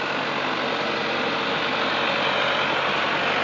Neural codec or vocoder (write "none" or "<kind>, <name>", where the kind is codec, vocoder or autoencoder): none